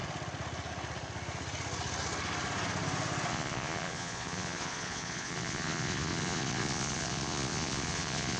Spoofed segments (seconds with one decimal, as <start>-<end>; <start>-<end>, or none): 3.3-8.4